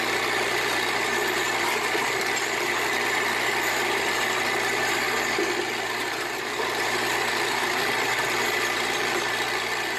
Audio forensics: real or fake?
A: fake